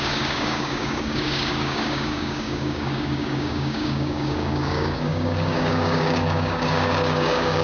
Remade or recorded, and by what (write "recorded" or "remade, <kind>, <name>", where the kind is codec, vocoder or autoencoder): remade, codec, DAC